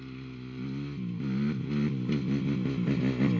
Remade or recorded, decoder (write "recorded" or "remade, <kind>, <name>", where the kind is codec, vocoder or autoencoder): recorded